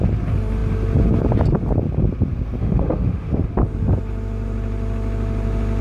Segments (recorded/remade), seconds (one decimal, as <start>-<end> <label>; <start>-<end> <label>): 0.0-2.6 recorded; 2.6-3.5 remade; 3.5-5.8 recorded